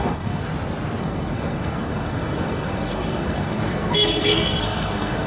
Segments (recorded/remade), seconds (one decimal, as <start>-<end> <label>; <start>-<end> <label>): 0.0-0.5 remade; 0.5-1.0 recorded; 1.0-5.3 remade